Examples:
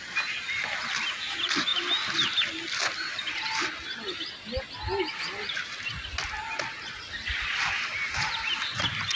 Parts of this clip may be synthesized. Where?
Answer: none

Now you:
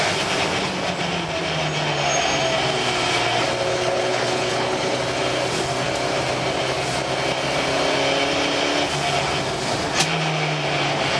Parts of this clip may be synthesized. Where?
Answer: 3.7-5.0

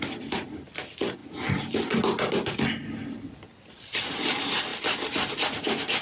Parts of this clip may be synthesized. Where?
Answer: none

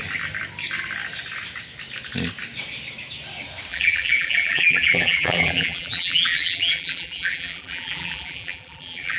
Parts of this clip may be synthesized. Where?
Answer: 3.7-9.2

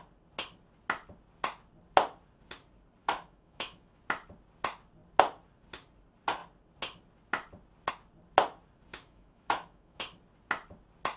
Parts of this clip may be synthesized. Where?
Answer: 3.0-4.0; 8.9-10.0

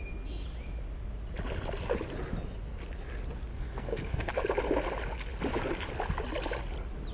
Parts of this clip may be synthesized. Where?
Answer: 3.5-4.3